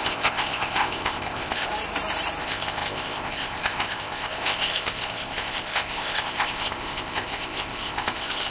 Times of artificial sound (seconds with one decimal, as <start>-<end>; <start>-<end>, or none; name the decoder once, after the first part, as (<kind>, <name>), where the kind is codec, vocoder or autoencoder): 0.0-1.7 (codec, ZipCodec); 2.4-8.5